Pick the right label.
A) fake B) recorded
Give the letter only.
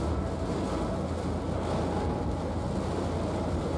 B